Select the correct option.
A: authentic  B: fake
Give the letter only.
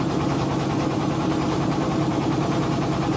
A